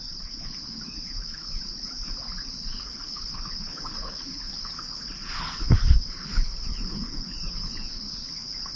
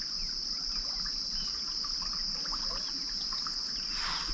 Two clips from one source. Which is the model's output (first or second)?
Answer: first